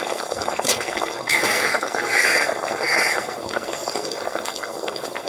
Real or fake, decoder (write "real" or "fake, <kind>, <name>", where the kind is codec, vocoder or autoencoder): fake, codec, SNAC